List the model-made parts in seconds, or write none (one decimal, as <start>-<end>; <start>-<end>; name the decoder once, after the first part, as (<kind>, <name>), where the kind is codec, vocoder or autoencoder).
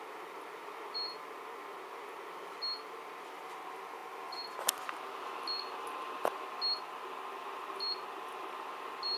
none